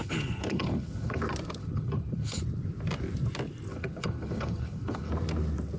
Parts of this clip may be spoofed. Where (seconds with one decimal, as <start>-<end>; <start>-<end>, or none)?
0.0-1.2; 1.6-2.4; 3.7-5.1